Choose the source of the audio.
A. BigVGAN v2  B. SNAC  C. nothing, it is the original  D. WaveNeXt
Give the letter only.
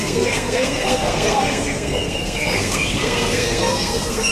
B